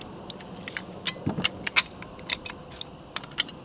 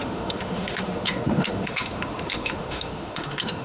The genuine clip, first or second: first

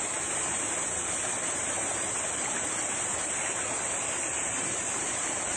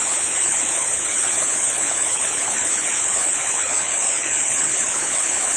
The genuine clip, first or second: first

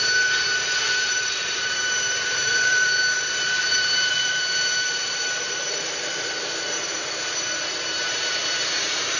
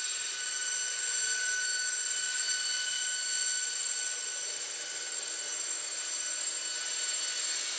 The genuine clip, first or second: second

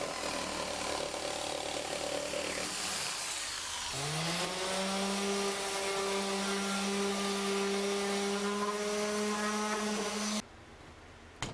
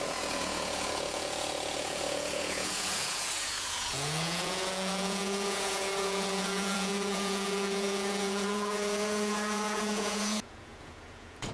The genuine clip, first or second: first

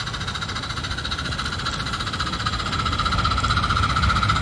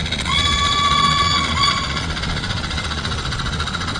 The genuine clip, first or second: first